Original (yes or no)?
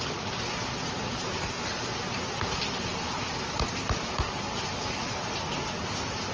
yes